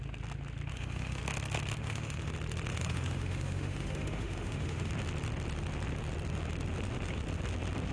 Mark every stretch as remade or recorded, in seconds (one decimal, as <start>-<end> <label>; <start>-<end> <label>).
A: 0.0-0.7 recorded; 0.7-1.2 remade; 1.2-1.8 recorded; 1.8-2.3 remade; 2.3-2.7 recorded; 2.7-4.9 remade; 4.9-7.9 recorded